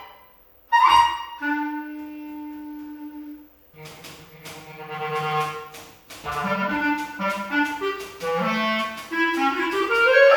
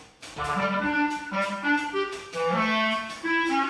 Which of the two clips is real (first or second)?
first